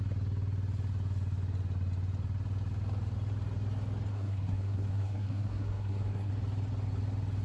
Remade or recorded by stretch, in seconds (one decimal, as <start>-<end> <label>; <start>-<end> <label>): 0.0-4.1 recorded; 4.1-6.3 remade; 6.3-7.4 recorded